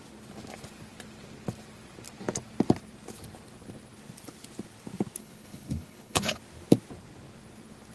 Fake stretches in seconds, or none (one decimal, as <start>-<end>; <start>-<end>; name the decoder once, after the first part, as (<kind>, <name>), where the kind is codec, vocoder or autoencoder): 5.2-6.4 (codec, HILCodec)